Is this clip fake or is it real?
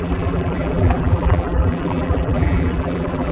fake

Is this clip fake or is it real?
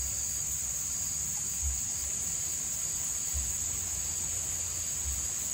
real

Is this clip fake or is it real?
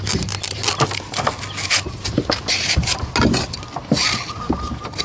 real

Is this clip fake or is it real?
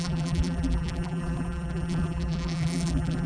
fake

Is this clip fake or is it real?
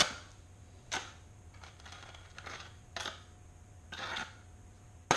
real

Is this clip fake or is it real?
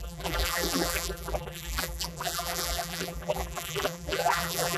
fake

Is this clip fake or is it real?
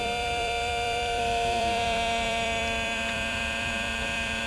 fake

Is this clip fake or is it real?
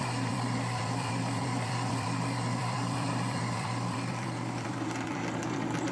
fake